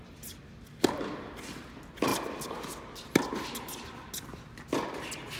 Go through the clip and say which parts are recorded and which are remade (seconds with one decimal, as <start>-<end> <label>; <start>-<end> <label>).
0.0-5.4 recorded